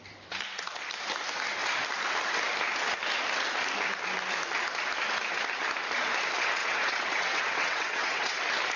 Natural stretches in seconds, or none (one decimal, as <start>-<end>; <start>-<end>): 0.0-6.6; 8.4-8.8